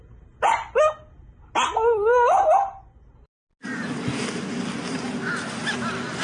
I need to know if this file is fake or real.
real